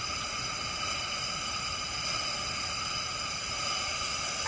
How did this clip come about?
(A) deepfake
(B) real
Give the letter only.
B